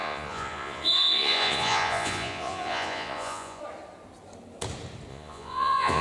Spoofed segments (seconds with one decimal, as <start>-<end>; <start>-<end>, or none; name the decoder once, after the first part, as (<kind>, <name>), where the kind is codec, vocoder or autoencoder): 0.0-3.6 (vocoder, Vocos); 5.1-6.0